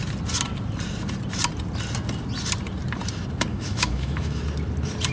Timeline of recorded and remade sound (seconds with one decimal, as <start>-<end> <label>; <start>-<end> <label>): 0.0-3.5 recorded; 3.5-4.4 remade; 4.4-5.1 recorded